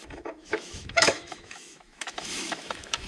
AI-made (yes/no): yes